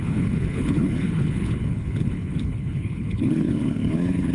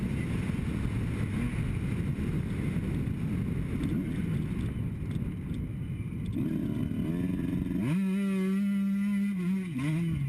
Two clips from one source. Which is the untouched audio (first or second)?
second